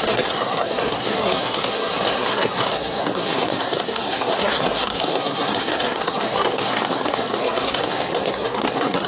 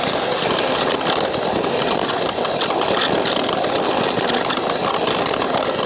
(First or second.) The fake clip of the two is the first